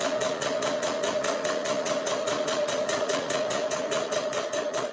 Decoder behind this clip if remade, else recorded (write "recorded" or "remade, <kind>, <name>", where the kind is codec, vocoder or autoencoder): remade, vocoder, Vocos